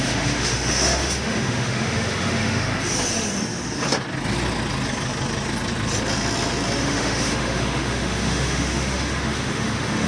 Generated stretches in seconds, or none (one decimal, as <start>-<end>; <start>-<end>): 0.0-2.7; 6.8-10.1